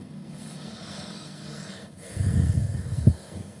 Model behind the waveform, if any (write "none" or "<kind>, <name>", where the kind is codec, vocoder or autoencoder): codec, SNAC